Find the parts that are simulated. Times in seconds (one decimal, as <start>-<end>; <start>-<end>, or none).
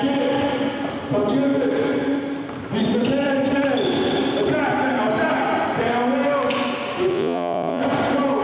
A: 7.1-7.8